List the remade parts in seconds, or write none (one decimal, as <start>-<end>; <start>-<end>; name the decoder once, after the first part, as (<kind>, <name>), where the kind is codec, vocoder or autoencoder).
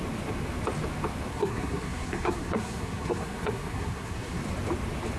1.3-4.4 (codec, SNAC)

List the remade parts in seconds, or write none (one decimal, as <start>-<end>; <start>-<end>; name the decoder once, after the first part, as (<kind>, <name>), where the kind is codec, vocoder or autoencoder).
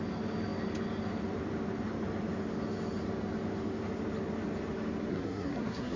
5.1-6.0 (codec, SNAC)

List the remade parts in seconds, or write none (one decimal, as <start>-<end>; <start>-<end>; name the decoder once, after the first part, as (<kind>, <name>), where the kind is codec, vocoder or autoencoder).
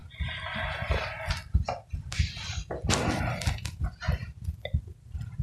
none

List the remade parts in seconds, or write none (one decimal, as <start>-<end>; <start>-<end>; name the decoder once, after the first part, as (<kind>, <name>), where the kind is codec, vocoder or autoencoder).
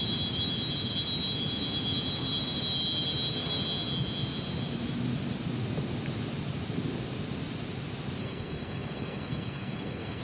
8.2-10.2 (codec, SNAC)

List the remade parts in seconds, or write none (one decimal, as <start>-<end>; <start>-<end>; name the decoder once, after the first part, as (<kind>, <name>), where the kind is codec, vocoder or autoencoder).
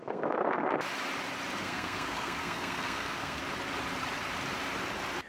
0.0-0.8 (codec, SNAC); 1.6-3.4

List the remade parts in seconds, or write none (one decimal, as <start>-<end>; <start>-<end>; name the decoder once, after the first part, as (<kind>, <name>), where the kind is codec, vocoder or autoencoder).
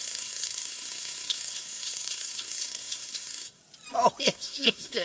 0.0-3.6 (codec, SNAC); 4.2-5.0